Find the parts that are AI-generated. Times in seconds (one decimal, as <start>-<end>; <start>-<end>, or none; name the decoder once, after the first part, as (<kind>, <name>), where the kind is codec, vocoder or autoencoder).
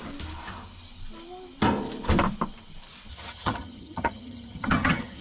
3.1-5.2 (vocoder, HiFi-GAN)